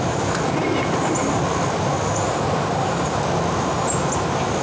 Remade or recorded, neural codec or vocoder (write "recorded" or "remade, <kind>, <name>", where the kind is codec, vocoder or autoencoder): recorded